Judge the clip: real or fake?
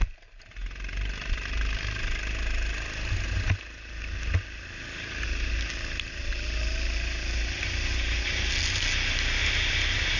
real